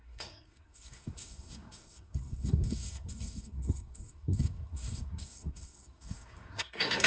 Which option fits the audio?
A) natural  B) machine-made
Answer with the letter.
B